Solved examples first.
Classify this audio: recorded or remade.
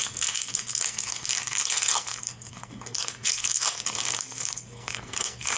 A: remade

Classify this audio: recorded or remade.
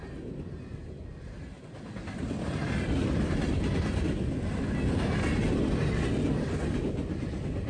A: recorded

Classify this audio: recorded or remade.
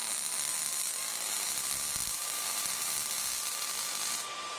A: recorded